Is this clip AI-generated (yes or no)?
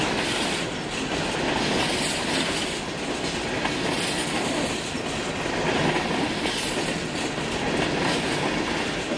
no